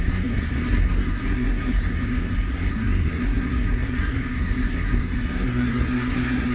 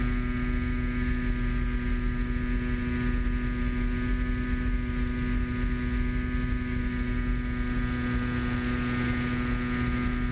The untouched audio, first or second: second